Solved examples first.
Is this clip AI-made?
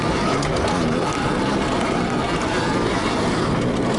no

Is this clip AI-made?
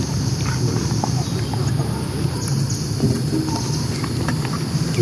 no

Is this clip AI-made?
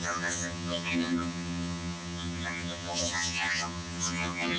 yes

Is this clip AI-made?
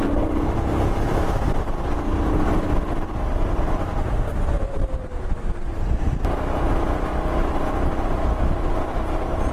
no